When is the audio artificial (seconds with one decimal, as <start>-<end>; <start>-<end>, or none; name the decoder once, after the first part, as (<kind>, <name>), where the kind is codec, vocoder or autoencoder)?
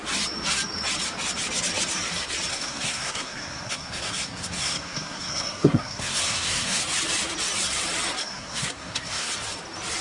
2.5-6.8 (codec, SNAC); 8.2-9.3